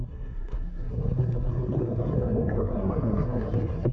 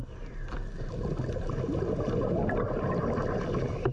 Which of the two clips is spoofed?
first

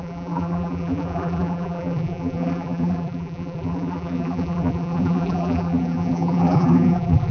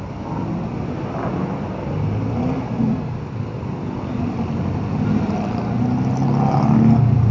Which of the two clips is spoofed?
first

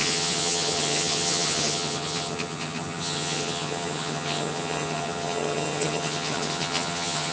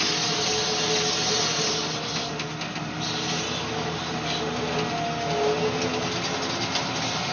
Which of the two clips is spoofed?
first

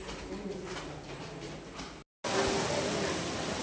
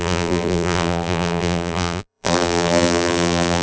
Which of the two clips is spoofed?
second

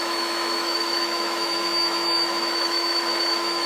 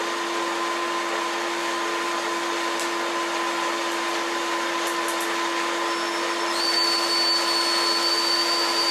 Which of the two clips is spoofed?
first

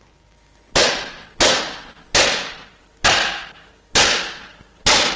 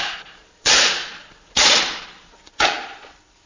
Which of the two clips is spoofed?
second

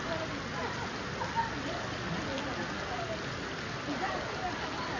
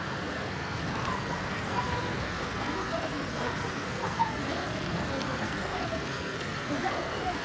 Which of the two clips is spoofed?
second